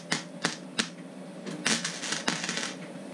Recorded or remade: recorded